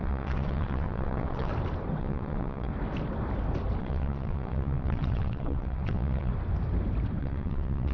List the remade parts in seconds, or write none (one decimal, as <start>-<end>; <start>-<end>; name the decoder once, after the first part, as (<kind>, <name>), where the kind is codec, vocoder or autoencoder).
0.0-1.5 (vocoder, WaveNeXt); 2.0-2.7; 3.8-6.3; 7.2-7.9